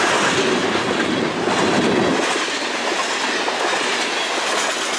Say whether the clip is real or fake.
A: real